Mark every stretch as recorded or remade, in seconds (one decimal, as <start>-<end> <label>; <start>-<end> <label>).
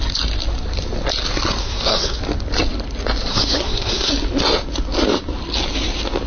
0.0-1.6 recorded; 1.6-2.2 remade; 2.2-3.3 recorded; 3.3-4.1 remade; 4.1-6.3 recorded